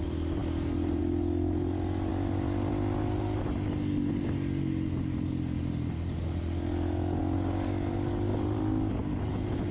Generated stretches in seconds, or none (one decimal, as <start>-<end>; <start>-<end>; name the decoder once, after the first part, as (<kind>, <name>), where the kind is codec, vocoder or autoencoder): none